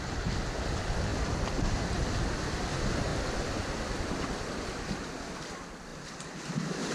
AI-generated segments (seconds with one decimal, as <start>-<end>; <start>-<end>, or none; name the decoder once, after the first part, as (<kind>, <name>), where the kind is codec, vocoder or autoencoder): none